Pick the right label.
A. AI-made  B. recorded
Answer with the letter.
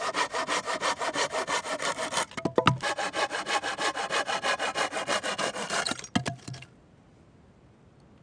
B